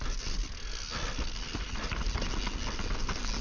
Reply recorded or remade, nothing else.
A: recorded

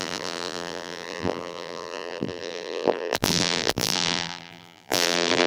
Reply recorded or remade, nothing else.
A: remade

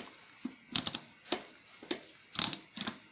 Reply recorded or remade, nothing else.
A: recorded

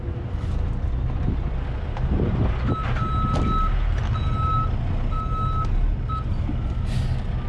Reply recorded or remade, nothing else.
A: recorded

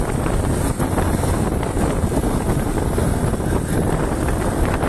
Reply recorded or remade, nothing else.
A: recorded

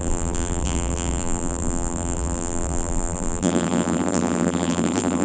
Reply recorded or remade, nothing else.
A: remade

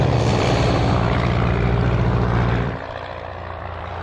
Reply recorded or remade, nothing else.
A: remade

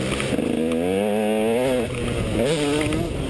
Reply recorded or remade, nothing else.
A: recorded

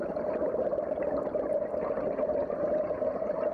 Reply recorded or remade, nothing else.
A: recorded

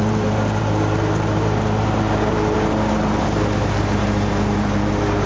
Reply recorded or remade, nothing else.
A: remade